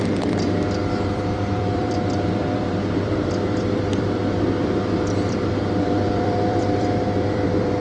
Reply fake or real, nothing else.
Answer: fake